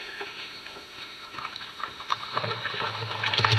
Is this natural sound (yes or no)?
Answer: no